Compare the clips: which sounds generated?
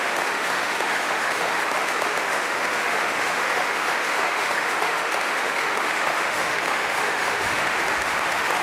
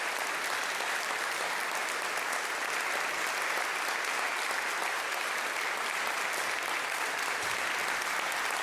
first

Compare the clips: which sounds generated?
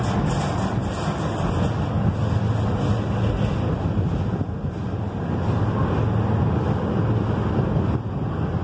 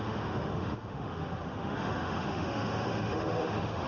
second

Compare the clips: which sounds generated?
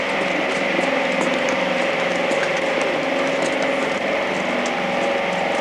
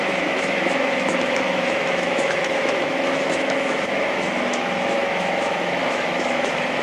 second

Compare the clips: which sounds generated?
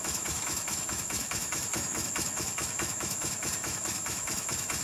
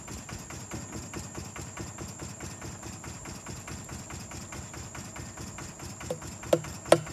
first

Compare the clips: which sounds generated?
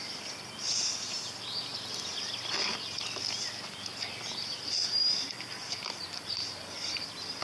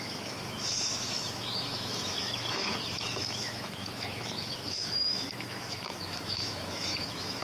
second